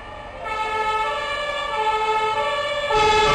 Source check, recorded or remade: recorded